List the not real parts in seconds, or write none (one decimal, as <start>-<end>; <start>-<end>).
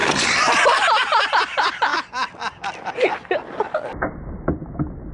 none